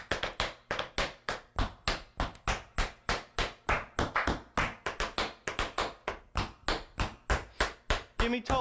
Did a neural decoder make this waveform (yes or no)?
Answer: no